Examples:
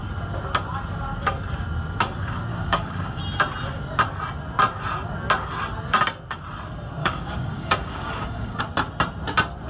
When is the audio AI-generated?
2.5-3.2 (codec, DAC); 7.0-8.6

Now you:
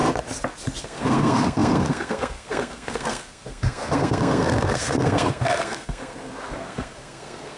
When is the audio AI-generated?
0.8-7.6 (codec, SNAC)